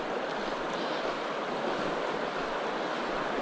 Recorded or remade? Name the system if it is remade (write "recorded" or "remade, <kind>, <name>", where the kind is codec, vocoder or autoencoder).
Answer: recorded